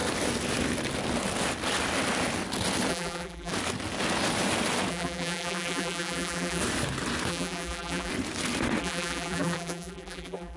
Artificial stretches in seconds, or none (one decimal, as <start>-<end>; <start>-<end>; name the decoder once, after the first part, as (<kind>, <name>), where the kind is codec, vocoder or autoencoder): 2.9-3.5 (vocoder, BigVGAN v2); 4.9-6.6; 7.3-8.1; 8.8-10.6